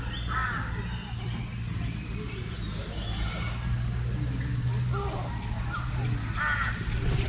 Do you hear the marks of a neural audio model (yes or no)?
no